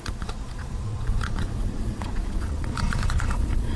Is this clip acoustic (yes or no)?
no